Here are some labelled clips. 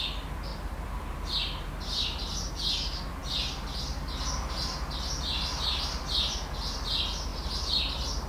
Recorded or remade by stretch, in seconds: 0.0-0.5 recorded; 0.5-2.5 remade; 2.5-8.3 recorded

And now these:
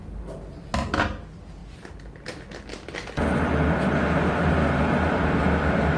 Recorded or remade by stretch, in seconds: 0.0-6.0 recorded

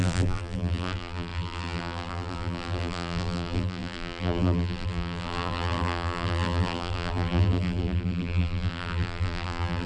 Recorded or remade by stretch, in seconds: 0.0-9.9 remade

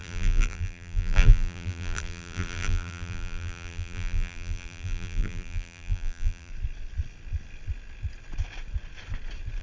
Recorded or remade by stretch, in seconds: 0.0-6.5 remade; 6.5-9.6 recorded

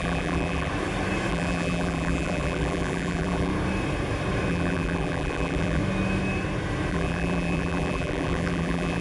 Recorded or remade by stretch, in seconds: 0.0-0.7 remade; 0.7-1.3 recorded; 1.3-3.5 remade; 3.5-4.5 recorded; 4.5-5.8 remade; 5.8-6.9 recorded; 6.9-9.0 remade